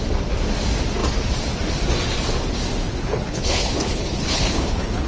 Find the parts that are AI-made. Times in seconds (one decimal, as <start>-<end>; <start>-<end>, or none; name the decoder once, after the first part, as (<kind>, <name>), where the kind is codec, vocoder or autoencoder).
3.0-5.1 (codec, HILCodec)